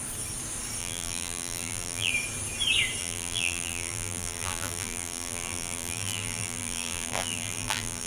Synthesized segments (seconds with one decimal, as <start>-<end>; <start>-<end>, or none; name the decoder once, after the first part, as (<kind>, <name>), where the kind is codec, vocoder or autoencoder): 0.8-2.1 (vocoder, BigVGAN v2); 3.0-8.1